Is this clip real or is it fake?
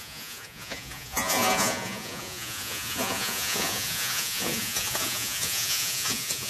fake